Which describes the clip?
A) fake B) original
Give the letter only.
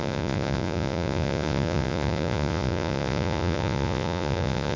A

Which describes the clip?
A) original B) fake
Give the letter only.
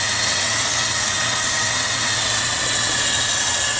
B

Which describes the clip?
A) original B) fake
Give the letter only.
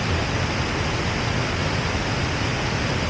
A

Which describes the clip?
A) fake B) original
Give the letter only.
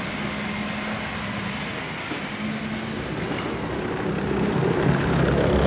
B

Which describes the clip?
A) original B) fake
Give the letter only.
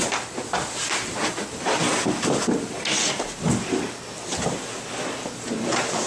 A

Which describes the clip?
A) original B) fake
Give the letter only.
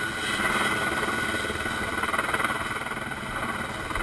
A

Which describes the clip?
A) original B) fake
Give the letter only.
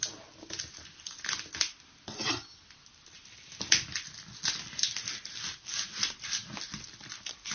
A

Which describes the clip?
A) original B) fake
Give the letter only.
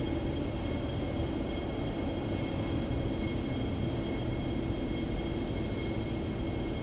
A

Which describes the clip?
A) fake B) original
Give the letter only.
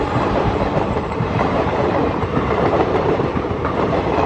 A